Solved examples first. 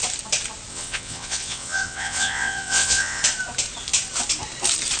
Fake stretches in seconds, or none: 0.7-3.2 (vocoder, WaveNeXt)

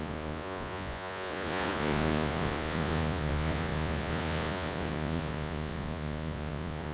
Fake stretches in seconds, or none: 0.0-6.9 (vocoder, Vocos)

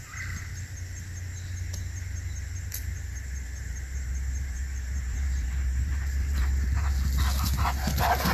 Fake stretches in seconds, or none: 2.8-6.9 (vocoder, BigVGAN v2)

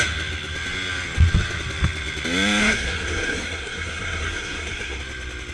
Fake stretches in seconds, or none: 2.6-5.0 (codec, SNAC)

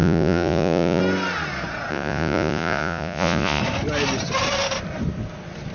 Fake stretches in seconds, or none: 0.0-1.0 (vocoder, Vocos); 1.9-3.6

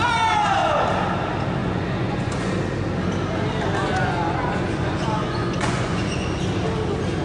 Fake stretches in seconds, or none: 1.6-2.5 (vocoder, Vocos); 3.8-6.4